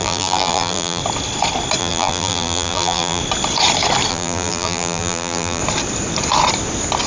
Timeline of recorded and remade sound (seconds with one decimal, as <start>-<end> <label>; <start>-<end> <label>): 0.0-1.0 remade; 1.0-1.8 recorded; 1.8-3.2 remade; 3.2-4.1 recorded; 4.1-5.6 remade; 5.6-7.1 recorded